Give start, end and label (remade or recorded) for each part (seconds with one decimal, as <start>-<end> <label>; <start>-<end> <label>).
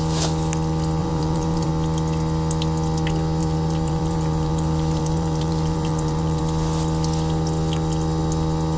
0.0-1.0 recorded; 1.0-1.7 remade; 1.7-3.4 recorded; 3.4-6.4 remade; 6.4-8.8 recorded